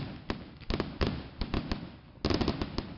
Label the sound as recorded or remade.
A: recorded